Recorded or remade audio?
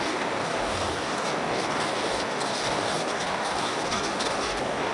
remade